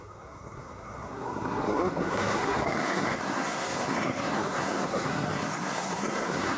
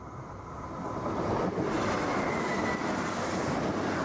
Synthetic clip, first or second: first